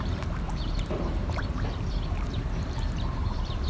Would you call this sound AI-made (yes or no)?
yes